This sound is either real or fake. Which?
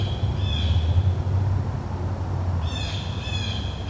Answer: real